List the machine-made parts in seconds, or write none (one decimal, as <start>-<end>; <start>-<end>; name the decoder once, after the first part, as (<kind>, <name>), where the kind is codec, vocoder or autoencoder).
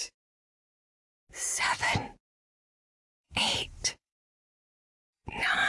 none